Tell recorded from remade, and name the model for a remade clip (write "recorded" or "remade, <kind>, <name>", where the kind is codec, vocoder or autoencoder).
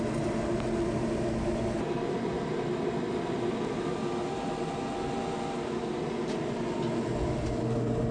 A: recorded